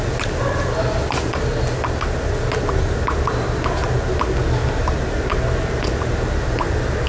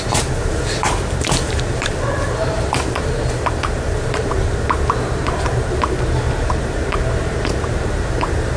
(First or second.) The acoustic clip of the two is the first